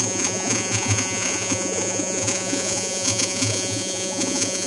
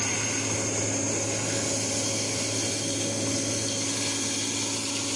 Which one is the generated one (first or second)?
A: first